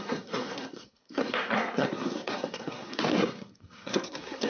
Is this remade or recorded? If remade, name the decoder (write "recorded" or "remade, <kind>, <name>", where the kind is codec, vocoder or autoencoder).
remade, codec, SNAC